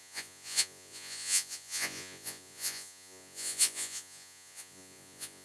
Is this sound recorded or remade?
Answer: remade